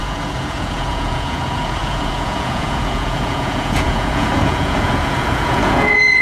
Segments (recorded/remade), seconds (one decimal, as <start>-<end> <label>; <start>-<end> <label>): 0.0-6.2 remade